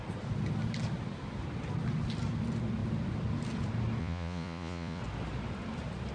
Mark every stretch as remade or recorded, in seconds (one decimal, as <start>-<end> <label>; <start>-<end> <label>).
0.0-4.0 recorded; 4.0-5.0 remade; 5.0-6.1 recorded